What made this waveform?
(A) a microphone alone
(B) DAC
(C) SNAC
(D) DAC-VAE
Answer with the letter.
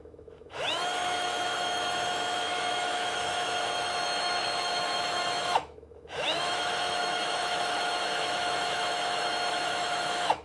D